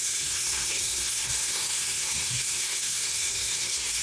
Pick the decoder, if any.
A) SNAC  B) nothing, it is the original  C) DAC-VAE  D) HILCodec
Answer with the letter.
A